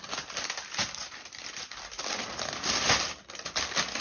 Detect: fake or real real